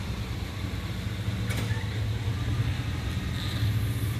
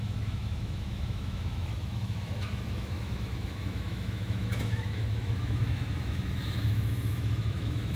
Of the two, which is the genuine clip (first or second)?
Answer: first